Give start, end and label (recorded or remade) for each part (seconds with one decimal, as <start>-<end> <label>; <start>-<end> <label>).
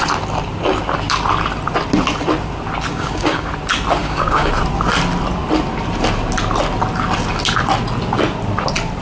0.0-2.9 recorded; 2.9-3.5 remade; 3.5-4.0 recorded; 4.0-4.5 remade; 4.5-9.0 recorded